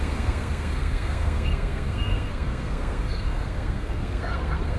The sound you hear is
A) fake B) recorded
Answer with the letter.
A